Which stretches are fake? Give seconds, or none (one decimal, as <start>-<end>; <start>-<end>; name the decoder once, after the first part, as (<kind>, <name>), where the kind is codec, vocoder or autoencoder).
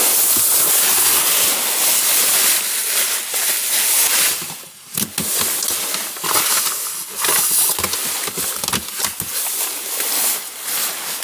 none